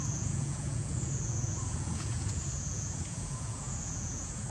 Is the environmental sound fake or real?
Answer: fake